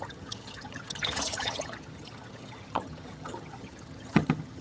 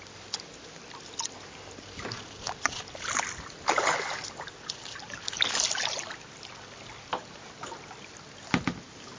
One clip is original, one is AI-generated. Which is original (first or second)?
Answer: second